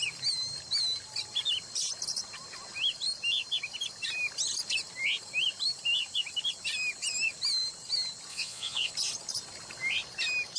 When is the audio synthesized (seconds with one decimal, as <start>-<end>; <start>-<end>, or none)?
8.3-8.9

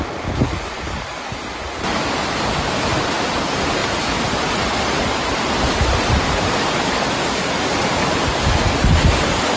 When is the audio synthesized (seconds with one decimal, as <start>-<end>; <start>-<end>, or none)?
none

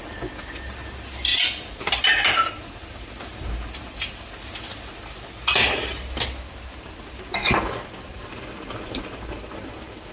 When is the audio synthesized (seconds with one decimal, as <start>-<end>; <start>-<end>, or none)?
none

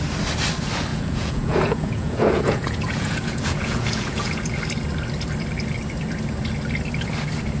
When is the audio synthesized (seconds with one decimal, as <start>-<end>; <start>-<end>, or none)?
0.9-4.6